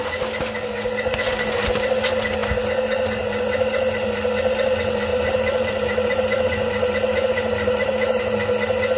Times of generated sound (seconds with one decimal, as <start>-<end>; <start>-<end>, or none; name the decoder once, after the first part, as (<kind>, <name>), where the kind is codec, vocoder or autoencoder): 5.1-8.2 (vocoder, BigVGAN v2)